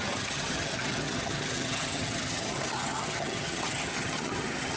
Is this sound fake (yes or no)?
yes